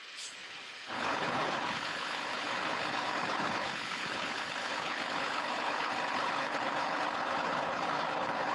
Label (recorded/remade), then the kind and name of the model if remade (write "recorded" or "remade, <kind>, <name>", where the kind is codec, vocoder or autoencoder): remade, codec, HILCodec